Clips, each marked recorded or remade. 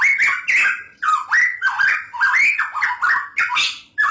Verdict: recorded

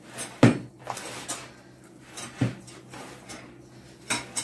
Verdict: recorded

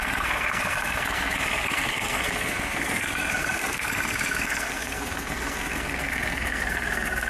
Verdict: remade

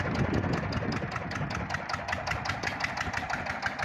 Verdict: recorded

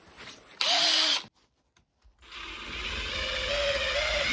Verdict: recorded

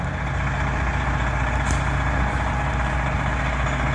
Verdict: recorded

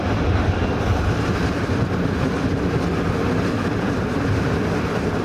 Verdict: recorded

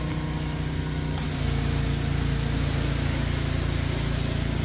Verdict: recorded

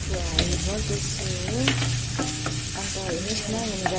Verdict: recorded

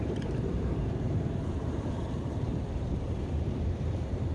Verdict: remade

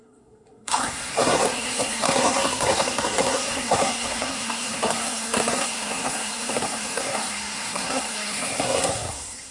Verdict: remade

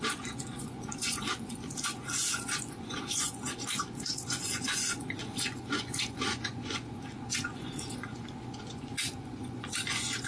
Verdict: remade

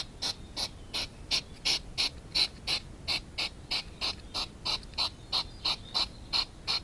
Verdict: recorded